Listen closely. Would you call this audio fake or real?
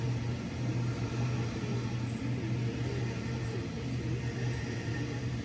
real